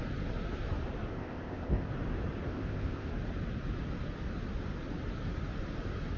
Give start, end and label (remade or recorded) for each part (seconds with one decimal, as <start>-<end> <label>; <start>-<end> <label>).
0.0-1.1 recorded; 1.1-1.9 remade; 1.9-2.5 recorded; 2.5-3.1 remade; 3.1-6.2 recorded